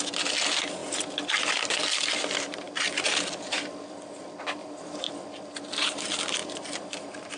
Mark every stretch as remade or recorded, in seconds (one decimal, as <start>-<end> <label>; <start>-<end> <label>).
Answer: 0.0-4.6 recorded; 4.6-5.1 remade; 5.1-6.4 recorded; 6.4-7.4 remade